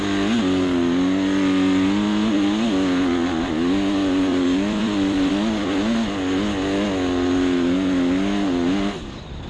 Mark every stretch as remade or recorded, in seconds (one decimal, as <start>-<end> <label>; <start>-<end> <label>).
0.0-4.3 recorded; 4.3-5.3 remade; 5.3-9.5 recorded